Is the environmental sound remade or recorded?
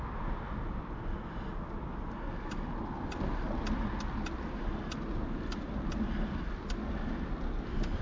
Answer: recorded